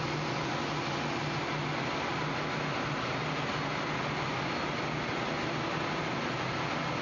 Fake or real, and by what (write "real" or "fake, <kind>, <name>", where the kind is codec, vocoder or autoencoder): real